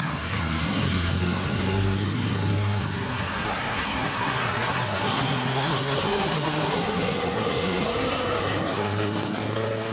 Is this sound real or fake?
fake